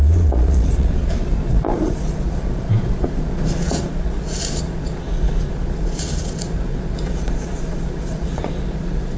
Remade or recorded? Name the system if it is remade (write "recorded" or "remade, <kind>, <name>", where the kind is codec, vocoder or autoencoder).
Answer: remade, vocoder, Vocos